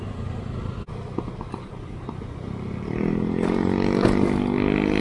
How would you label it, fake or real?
real